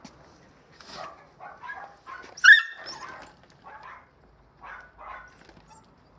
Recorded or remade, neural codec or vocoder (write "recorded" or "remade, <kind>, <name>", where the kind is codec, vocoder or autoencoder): recorded